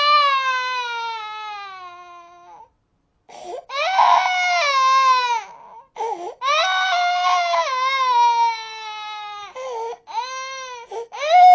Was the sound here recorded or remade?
recorded